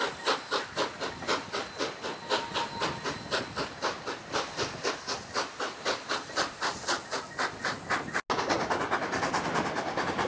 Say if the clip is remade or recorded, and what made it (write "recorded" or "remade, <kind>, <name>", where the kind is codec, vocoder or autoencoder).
recorded